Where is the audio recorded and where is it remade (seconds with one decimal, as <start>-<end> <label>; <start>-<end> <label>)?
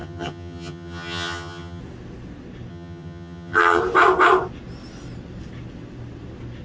0.0-1.8 remade; 1.8-2.7 recorded; 2.7-3.8 remade; 3.8-6.6 recorded